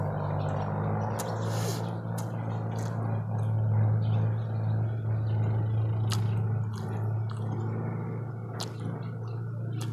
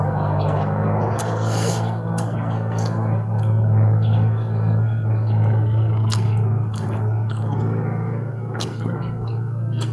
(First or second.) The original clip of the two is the first